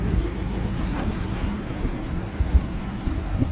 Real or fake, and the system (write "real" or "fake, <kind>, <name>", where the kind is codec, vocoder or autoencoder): fake, codec, SNAC